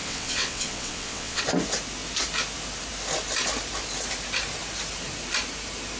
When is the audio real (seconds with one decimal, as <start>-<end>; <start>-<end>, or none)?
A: 1.4-6.0